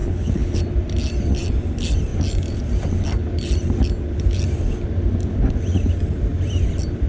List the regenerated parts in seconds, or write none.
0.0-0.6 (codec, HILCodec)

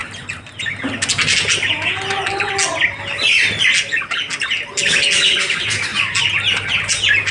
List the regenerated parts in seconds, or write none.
none

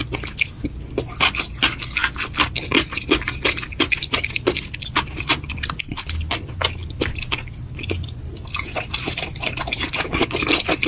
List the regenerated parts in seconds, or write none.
none

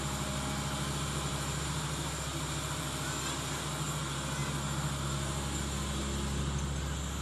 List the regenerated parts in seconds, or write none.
1.3-2.8 (vocoder, BigVGAN v2)

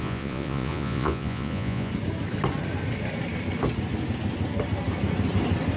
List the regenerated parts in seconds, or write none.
0.0-1.9 (vocoder, Vocos)

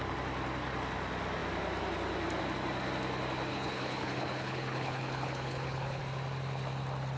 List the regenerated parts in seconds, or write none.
3.5-6.0 (codec, HILCodec)